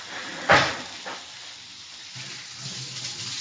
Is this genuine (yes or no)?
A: yes